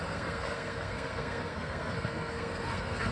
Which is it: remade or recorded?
remade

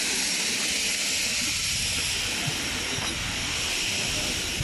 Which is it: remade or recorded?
recorded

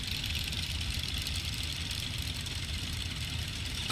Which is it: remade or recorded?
recorded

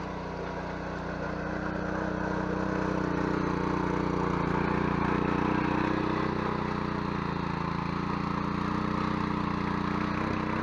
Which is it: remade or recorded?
recorded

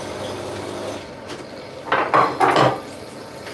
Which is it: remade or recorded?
recorded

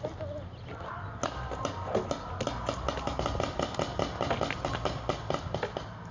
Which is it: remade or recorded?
recorded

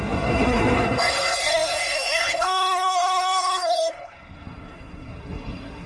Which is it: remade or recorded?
remade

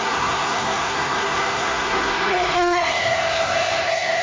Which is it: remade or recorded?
remade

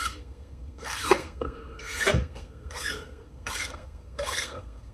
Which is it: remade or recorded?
remade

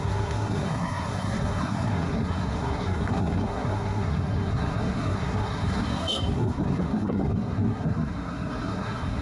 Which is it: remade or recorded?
remade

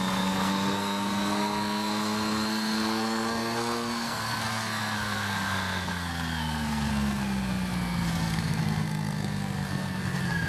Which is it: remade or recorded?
remade